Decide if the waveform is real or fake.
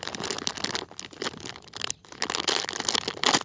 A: real